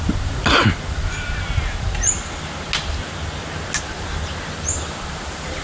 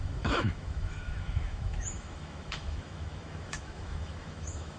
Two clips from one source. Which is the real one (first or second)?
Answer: first